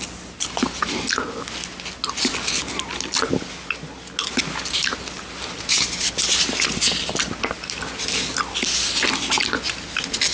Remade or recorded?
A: recorded